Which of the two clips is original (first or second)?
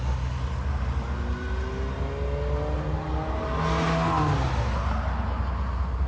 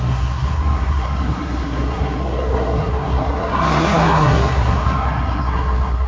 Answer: first